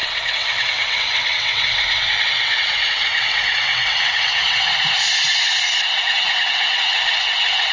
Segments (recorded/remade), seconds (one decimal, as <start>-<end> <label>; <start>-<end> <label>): 0.0-4.7 remade; 4.7-5.8 recorded; 5.8-7.7 remade